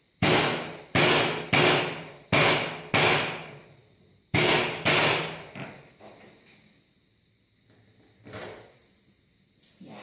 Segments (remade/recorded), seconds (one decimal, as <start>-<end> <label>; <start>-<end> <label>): 0.0-10.0 recorded